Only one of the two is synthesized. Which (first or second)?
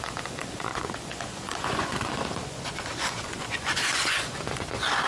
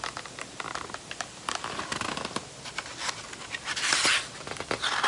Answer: first